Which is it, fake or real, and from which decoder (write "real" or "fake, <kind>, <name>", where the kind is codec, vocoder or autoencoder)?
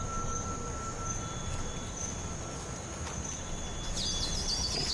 real